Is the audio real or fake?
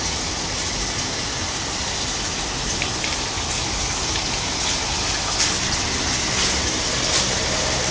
real